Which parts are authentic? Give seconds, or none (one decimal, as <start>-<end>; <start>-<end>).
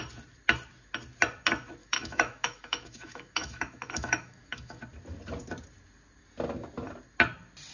0.0-1.8; 4.8-7.7